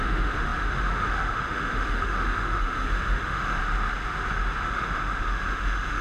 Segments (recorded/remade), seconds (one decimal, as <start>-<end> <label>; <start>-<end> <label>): 0.0-3.6 remade; 3.6-4.6 recorded; 4.6-6.0 remade